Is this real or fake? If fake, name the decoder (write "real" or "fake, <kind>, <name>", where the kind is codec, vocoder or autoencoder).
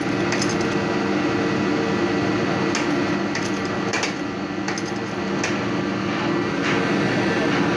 real